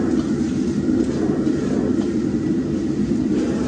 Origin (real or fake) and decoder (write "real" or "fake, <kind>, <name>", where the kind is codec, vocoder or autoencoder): real